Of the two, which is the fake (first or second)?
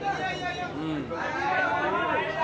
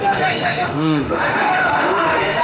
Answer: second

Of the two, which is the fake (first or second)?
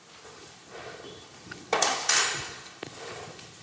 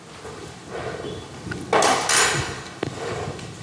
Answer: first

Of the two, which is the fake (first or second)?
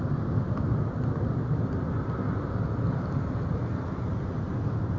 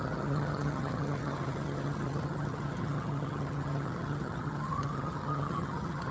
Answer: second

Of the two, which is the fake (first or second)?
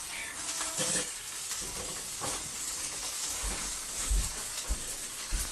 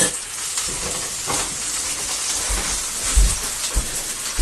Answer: first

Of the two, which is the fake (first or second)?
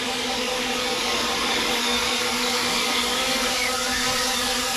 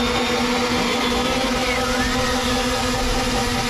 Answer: first